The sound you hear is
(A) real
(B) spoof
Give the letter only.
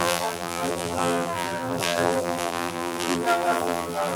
B